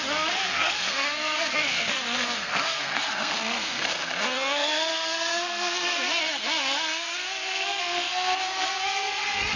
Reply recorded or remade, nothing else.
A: remade